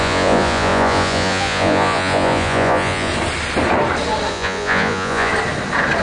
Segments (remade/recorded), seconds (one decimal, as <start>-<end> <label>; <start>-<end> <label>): 0.0-3.1 remade; 3.1-4.3 recorded; 4.3-5.3 remade; 5.3-6.0 recorded